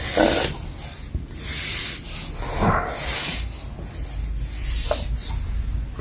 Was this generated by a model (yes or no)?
no